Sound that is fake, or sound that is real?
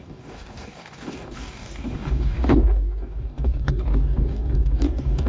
fake